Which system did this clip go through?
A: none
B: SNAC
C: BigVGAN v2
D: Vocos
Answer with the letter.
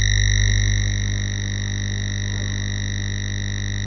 A